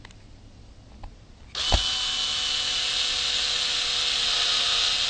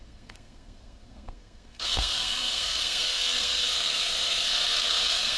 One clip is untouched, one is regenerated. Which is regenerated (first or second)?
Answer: second